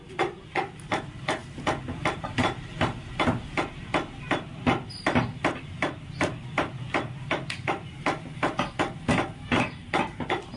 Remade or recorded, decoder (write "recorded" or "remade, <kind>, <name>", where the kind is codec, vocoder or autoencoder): remade, vocoder, BigVGAN v2